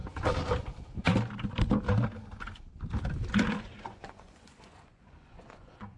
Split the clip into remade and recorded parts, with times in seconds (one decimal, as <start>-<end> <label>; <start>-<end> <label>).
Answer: 0.0-3.6 recorded; 3.6-6.0 remade